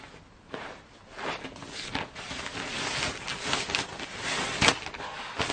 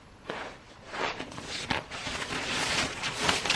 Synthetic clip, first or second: second